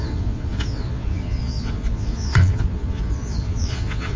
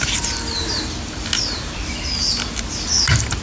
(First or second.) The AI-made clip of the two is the first